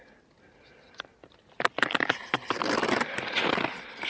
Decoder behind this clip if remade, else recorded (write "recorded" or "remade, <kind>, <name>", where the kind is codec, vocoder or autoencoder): recorded